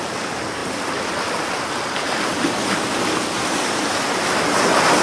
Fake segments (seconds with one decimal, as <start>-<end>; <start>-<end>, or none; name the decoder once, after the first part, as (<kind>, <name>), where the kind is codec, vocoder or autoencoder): none